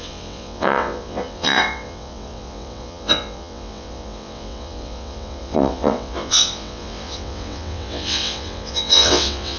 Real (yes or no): no